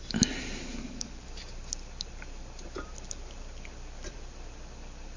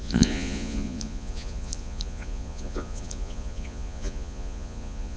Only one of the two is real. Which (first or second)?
first